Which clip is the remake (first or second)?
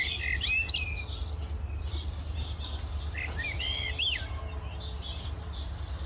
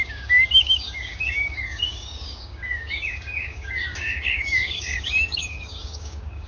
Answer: second